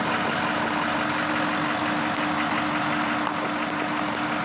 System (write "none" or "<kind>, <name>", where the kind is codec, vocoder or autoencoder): none